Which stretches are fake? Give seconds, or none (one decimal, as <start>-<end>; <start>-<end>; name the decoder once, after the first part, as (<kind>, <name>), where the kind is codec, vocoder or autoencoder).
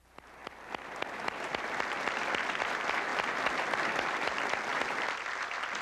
4.7-5.8 (vocoder, BigVGAN v2)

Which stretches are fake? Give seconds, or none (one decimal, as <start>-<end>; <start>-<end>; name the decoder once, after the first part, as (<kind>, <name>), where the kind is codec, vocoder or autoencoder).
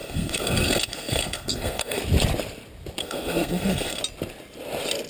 0.0-2.0 (codec, SNAC); 3.0-4.0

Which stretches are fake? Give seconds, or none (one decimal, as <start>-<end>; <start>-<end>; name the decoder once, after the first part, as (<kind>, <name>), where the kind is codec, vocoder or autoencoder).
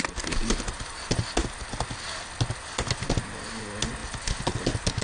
4.0-4.6 (vocoder, BigVGAN v2)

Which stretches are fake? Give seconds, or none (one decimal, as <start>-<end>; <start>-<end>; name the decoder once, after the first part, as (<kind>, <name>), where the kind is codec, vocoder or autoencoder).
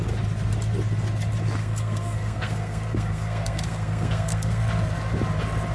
1.6-4.6 (codec, SNAC)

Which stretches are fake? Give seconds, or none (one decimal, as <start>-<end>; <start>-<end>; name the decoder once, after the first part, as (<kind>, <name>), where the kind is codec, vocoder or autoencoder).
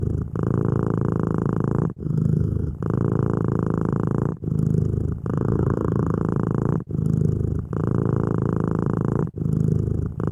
2.0-2.7 (autoencoder, DAC-VAE); 5.3-6.2